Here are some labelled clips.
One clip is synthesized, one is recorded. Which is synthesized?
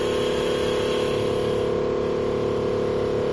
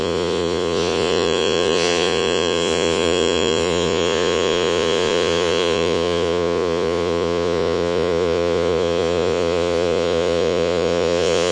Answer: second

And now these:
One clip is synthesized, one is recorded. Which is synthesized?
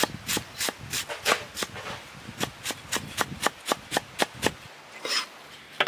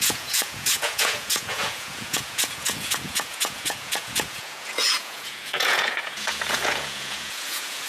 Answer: second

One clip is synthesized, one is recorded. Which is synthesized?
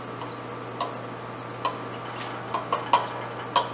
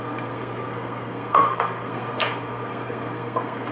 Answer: second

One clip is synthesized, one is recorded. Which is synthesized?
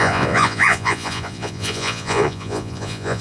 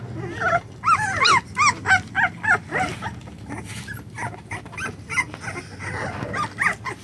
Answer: first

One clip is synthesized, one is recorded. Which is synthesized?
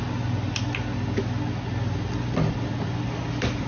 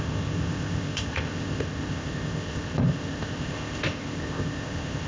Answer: second